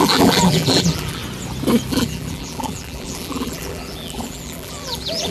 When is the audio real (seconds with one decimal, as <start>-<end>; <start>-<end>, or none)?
1.2-1.9

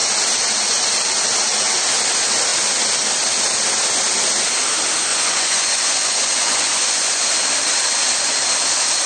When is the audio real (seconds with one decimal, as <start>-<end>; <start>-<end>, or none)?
0.0-5.1; 7.3-9.1

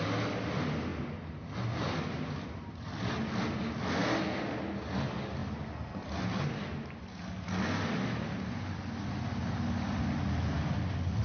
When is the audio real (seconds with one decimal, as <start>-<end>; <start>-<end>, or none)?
0.0-11.2

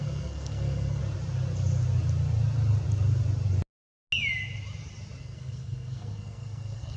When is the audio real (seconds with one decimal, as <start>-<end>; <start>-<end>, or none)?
1.0-5.2

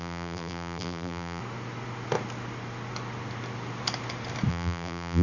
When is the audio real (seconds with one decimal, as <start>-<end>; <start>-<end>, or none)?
1.4-4.5

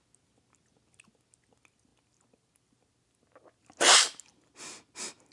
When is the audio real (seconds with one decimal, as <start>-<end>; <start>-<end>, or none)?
0.0-5.3

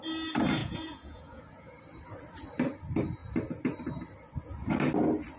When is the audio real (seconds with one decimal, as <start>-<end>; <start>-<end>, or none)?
0.0-0.6; 1.8-5.4

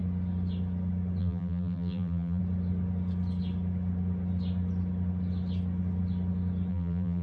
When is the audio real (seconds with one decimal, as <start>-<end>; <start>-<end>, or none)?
0.0-1.2; 2.4-6.7